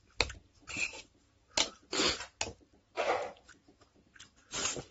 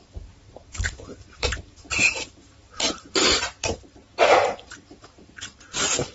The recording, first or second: first